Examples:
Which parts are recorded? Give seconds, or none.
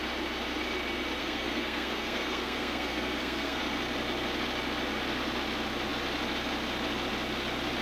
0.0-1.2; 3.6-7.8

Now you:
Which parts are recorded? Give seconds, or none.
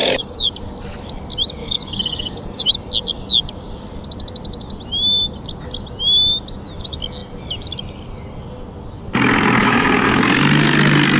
0.5-1.6; 2.7-9.6; 10.2-11.2